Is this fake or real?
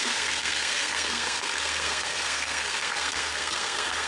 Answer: fake